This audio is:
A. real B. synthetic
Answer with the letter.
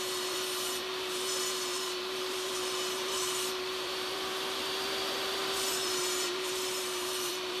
B